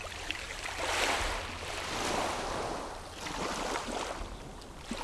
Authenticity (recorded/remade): recorded